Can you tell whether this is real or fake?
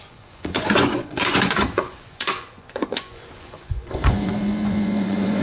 fake